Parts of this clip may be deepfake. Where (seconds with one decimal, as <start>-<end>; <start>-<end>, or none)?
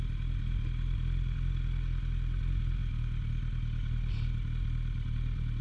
none